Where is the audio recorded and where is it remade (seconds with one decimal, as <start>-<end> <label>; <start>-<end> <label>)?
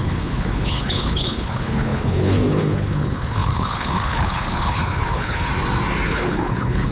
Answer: 0.0-5.5 remade; 5.5-6.1 recorded; 6.1-6.9 remade